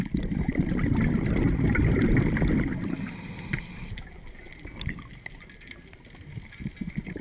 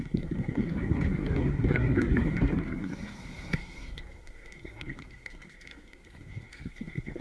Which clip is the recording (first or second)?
first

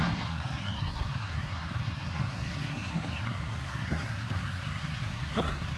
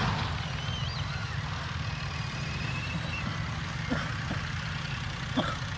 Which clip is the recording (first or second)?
second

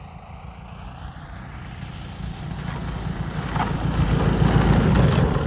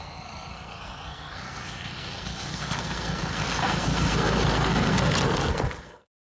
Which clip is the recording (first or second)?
first